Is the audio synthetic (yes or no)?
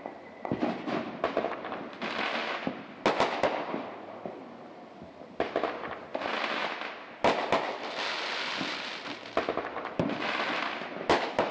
no